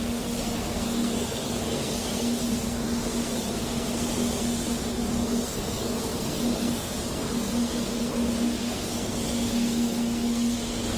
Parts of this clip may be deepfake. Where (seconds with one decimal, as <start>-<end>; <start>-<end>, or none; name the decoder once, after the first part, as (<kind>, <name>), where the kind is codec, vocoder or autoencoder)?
0.0-11.0 (codec, SNAC)